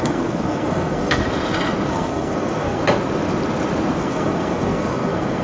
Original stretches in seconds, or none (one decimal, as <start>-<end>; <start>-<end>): 1.2-1.9; 2.8-4.0